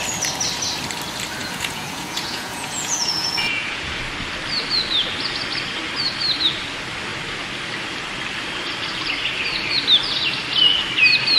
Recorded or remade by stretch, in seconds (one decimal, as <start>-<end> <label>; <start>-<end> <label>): 0.0-1.4 recorded; 1.4-4.0 remade; 4.0-11.4 recorded